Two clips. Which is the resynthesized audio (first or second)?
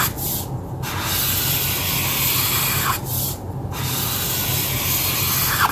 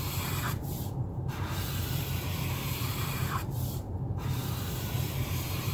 second